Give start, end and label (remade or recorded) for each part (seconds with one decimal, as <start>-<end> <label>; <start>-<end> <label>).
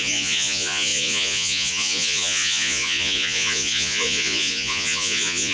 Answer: 0.0-5.5 remade